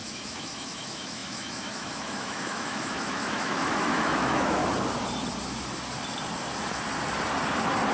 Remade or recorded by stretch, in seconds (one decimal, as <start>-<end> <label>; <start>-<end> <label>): 0.0-4.6 remade; 4.6-7.9 recorded